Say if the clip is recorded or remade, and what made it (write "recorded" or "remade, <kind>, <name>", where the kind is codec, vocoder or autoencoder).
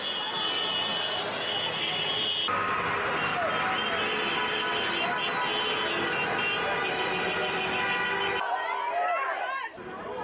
recorded